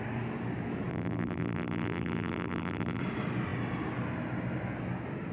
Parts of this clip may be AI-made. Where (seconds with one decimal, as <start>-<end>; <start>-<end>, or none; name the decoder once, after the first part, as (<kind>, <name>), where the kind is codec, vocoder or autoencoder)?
0.9-3.0 (vocoder, BigVGAN v2)